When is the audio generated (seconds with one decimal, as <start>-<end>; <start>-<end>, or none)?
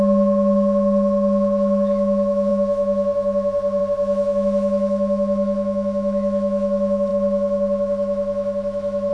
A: 0.0-9.1